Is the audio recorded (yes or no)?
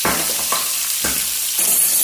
no